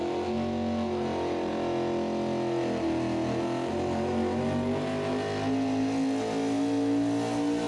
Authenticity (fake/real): real